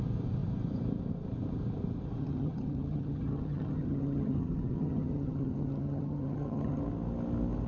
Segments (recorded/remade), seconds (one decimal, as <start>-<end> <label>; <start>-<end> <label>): 0.0-2.2 recorded; 2.2-6.8 remade; 6.8-7.7 recorded